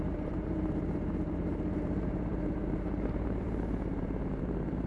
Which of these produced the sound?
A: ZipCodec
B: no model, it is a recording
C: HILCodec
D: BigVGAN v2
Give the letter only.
D